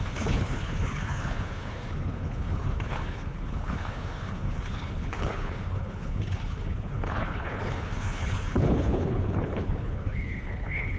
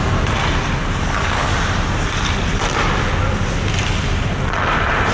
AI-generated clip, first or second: first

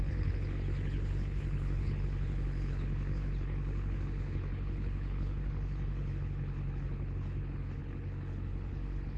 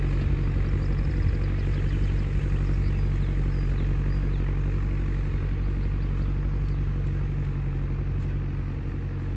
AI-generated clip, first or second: first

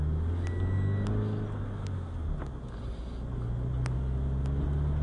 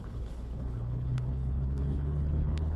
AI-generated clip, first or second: second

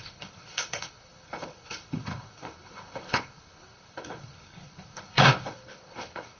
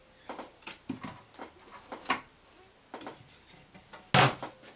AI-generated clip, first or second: first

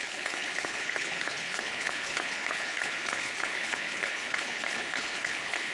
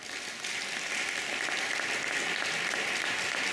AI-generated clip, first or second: first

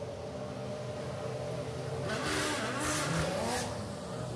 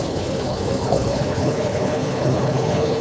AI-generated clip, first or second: second